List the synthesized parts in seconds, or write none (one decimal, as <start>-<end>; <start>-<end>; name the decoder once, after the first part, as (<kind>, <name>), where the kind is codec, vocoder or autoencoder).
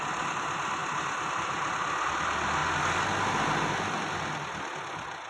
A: none